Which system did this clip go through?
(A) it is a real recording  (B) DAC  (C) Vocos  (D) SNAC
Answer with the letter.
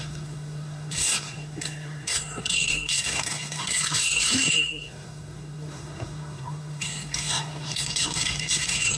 D